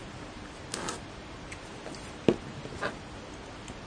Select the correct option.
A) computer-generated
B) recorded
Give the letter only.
B